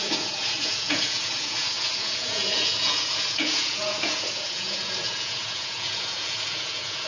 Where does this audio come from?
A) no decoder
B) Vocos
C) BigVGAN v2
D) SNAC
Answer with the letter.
B